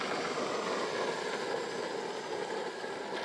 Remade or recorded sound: recorded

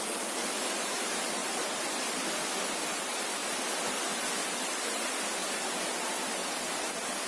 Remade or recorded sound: recorded